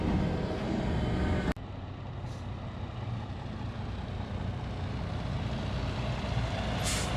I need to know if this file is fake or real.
real